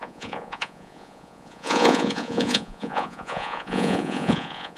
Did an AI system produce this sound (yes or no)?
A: yes